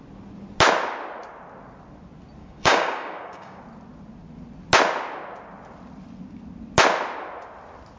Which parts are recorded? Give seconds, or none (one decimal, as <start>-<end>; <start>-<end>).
0.0-2.4; 3.6-8.0